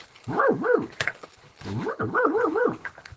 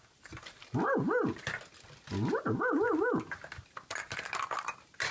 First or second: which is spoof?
first